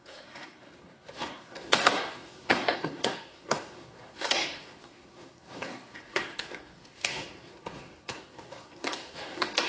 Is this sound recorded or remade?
remade